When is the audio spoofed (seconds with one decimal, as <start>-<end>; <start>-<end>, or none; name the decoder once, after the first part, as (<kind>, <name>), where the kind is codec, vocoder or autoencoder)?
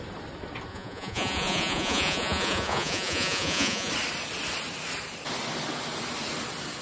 0.7-3.9 (vocoder, Vocos)